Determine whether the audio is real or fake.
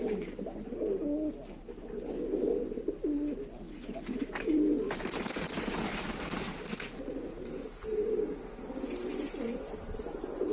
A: real